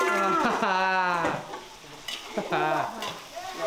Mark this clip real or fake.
real